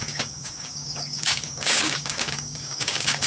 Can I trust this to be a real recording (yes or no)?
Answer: no